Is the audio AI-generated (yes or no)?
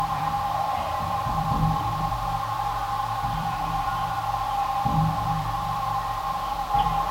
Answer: yes